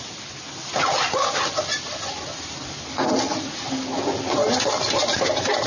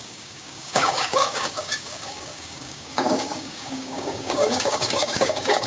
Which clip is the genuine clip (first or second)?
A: first